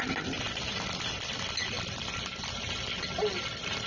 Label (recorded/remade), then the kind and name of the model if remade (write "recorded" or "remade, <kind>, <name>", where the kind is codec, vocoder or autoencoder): recorded